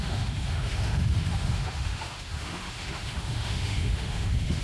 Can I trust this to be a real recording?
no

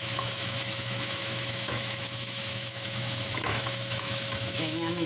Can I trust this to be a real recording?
no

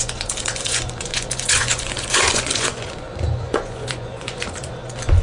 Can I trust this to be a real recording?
no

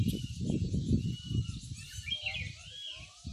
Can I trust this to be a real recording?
yes